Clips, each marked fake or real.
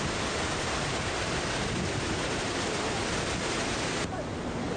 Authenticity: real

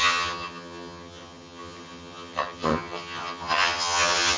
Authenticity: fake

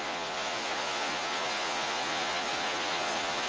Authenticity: fake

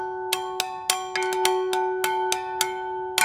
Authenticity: real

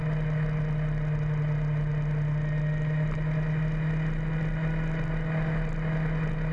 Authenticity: real